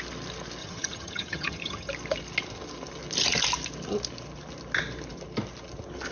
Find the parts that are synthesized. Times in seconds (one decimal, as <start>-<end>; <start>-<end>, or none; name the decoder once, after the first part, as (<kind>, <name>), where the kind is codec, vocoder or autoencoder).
0.6-1.9 (vocoder, HiFi-GAN)